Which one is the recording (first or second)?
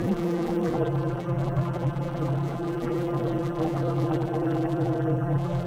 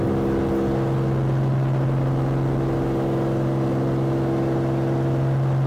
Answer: second